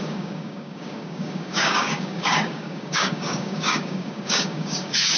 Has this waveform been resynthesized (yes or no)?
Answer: yes